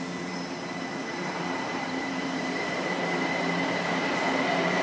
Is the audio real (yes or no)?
no